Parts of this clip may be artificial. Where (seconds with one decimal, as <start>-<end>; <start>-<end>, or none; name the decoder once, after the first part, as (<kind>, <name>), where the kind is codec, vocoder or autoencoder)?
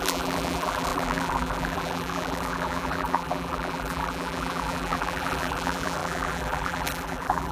0.0-7.5 (vocoder, BigVGAN v2)